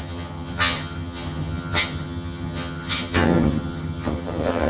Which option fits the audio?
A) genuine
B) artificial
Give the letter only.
B